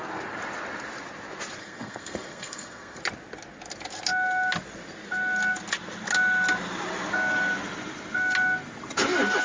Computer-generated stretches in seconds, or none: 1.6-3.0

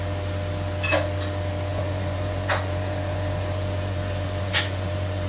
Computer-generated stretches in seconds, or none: 1.7-5.3

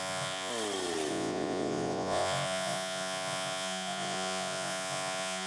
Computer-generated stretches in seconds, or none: 0.0-0.5; 1.1-5.5

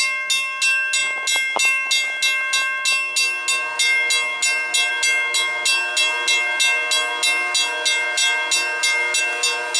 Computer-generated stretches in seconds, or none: none

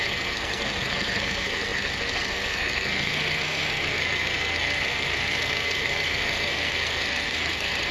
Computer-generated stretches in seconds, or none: 0.0-7.9

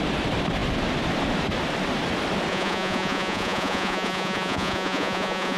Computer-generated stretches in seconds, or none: 2.5-5.6

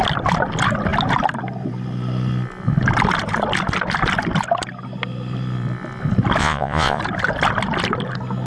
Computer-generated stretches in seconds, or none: 6.4-7.0

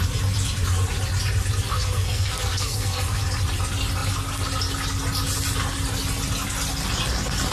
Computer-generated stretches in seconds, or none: 1.7-3.2